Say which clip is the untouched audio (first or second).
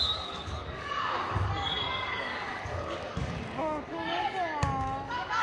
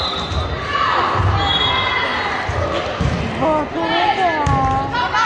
second